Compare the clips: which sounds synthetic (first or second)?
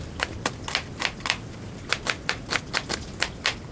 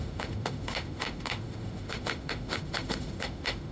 second